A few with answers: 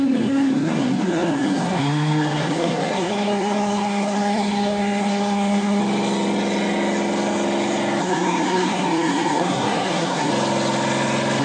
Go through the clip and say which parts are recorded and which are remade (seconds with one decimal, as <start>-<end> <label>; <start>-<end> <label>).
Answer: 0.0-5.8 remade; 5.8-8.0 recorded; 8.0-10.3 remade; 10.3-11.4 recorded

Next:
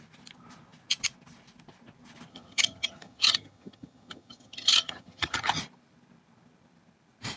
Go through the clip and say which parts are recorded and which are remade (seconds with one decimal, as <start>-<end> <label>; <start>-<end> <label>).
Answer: 0.0-2.3 recorded; 2.3-5.6 remade; 5.6-7.4 recorded

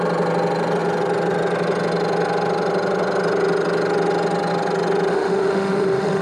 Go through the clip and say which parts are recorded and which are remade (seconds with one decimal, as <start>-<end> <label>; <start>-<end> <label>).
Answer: 0.0-5.1 recorded; 5.1-6.2 remade